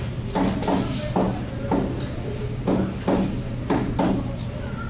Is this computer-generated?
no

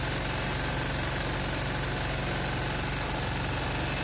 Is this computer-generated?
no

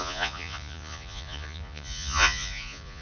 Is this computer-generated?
yes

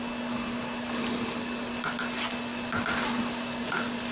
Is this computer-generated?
no